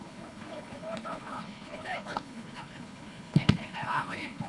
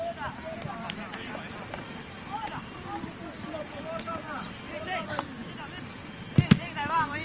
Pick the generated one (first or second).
first